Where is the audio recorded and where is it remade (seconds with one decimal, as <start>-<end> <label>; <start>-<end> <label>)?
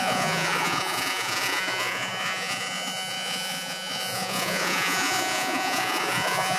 0.0-6.6 remade